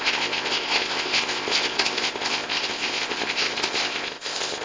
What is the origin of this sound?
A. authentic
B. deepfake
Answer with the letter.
B